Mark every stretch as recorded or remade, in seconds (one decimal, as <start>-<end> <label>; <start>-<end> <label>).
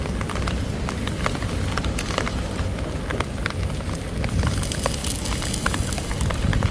0.0-6.7 recorded